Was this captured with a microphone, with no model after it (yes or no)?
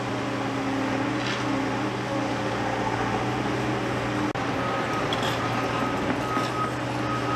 yes